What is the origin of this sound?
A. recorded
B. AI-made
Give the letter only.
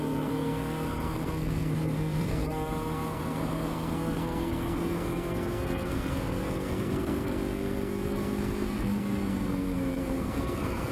B